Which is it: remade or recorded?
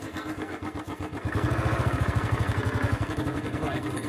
remade